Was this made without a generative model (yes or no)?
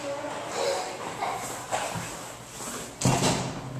yes